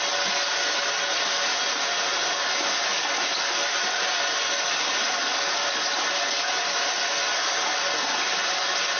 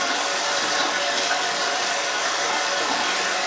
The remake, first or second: second